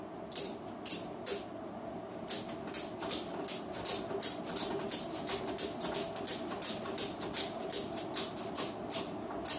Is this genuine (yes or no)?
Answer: yes